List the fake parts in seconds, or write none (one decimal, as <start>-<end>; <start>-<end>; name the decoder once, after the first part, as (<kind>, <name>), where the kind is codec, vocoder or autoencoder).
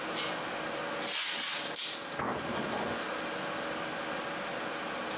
none